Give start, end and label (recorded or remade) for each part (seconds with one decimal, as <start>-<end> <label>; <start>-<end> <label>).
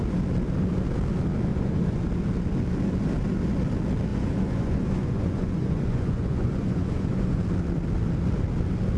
0.0-1.5 recorded; 1.5-2.0 remade; 2.0-4.1 recorded; 4.1-7.4 remade; 7.4-9.0 recorded